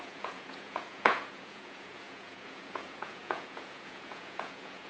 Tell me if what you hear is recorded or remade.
remade